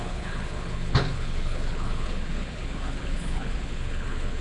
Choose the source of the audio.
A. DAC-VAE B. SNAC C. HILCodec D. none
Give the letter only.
C